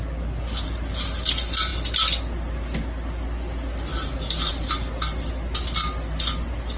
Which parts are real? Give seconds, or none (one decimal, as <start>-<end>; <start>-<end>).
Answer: 0.0-6.8